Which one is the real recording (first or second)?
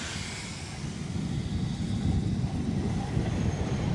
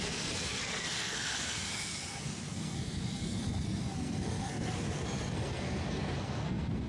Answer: first